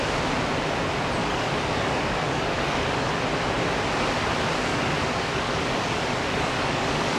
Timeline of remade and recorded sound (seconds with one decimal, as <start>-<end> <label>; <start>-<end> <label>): 0.0-1.2 recorded; 1.2-3.1 remade; 3.1-4.7 recorded; 4.7-7.2 remade

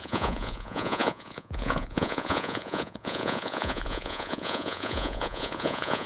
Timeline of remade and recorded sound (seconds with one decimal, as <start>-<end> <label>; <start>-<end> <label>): 0.0-6.1 remade